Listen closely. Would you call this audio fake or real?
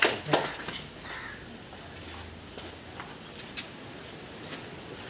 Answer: real